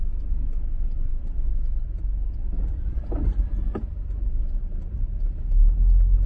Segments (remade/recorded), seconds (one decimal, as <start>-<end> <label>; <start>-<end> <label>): 0.0-1.1 recorded; 1.1-2.0 remade; 2.0-2.4 recorded; 2.4-5.4 remade; 5.4-6.3 recorded